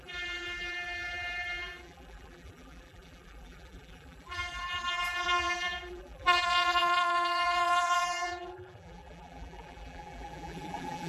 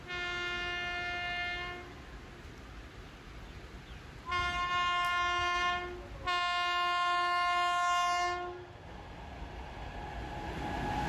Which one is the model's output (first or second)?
first